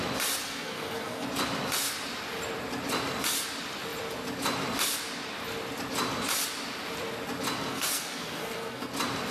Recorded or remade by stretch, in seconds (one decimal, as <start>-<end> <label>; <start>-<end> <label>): 0.0-0.4 recorded; 0.4-1.3 remade; 1.3-7.7 recorded; 7.7-8.9 remade; 8.9-9.3 recorded